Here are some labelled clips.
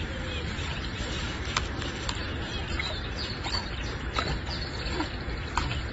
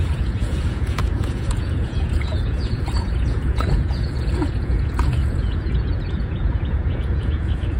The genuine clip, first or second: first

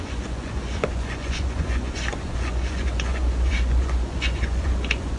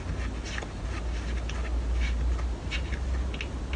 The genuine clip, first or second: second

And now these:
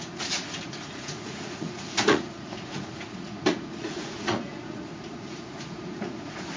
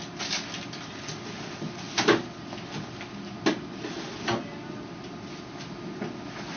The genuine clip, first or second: second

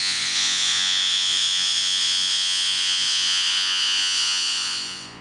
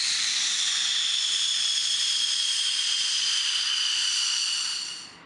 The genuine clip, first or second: second